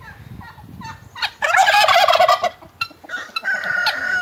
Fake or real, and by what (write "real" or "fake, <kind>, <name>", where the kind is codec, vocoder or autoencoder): real